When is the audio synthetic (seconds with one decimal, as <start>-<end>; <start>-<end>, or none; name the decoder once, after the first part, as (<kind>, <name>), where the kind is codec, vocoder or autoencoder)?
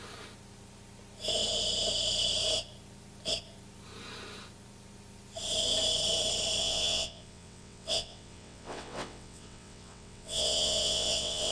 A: 6.6-11.5 (vocoder, WaveNeXt)